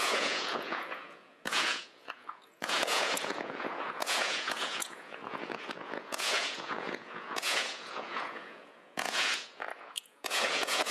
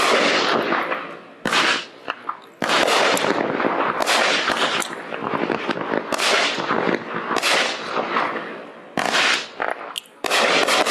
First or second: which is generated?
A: first